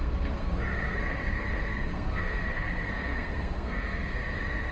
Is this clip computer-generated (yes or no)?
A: yes